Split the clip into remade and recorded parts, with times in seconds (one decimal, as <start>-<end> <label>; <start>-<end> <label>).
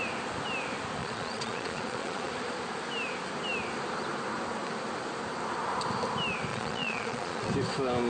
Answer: 0.0-1.0 recorded; 1.0-2.3 remade; 2.3-6.5 recorded; 6.5-7.5 remade; 7.5-8.1 recorded